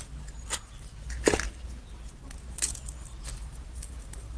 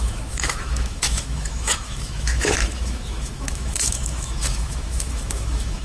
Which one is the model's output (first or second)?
second